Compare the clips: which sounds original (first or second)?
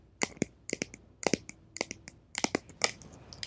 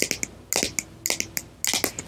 second